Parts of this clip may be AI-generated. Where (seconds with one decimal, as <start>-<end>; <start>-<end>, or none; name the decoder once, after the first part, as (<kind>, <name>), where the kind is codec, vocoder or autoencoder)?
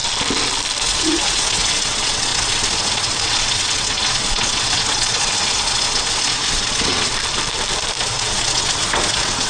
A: 0.8-7.1 (vocoder, WaveNeXt); 8.0-9.5